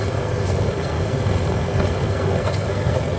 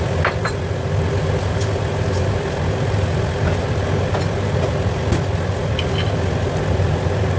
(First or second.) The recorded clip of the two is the second